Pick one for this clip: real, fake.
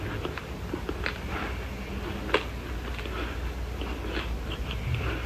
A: real